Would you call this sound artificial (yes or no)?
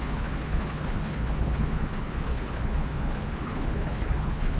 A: yes